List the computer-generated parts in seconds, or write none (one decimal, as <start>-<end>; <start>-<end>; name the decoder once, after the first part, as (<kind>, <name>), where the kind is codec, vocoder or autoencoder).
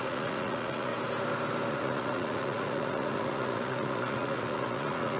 0.0-0.9 (vocoder, Vocos); 1.7-5.2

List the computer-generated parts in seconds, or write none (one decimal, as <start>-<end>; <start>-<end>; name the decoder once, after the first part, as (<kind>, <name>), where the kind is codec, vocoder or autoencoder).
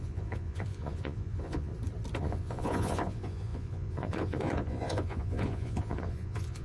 0.0-1.7 (vocoder, Vocos); 2.2-6.6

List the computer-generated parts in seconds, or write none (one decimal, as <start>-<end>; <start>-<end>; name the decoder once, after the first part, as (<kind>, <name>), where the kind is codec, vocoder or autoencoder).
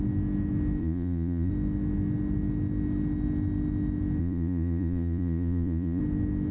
0.8-1.5 (vocoder, Vocos); 4.2-6.0